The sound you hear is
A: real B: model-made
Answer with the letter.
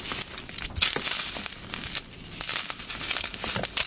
A